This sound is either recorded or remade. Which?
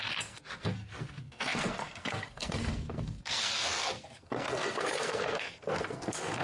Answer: remade